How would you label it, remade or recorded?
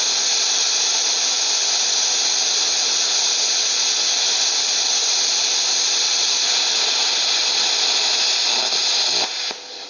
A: recorded